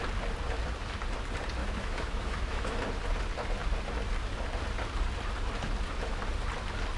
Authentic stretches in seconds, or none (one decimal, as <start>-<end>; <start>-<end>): 0.0-1.6; 2.8-7.0